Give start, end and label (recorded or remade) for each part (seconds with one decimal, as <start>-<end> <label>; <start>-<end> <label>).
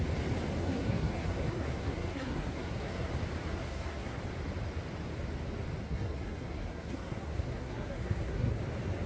0.0-0.6 recorded; 0.6-3.1 remade; 3.1-3.5 recorded; 3.5-4.2 remade; 4.2-5.8 recorded; 5.8-8.6 remade; 8.6-9.1 recorded